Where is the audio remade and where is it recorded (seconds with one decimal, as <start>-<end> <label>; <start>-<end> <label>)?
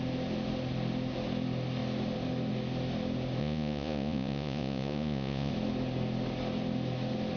0.0-3.4 recorded; 3.4-5.5 remade; 5.5-7.4 recorded